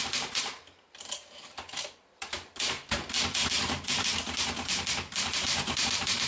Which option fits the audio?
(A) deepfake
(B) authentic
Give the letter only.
A